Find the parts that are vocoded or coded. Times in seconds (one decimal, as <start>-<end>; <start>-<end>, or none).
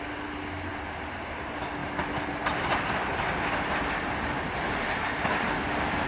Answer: 1.8-5.5